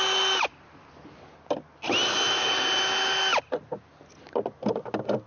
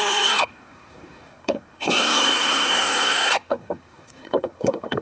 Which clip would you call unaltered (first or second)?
first